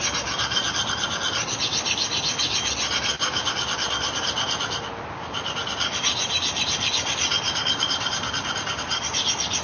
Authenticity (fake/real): real